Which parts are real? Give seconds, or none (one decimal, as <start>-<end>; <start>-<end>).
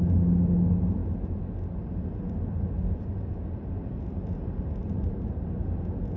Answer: 0.0-6.2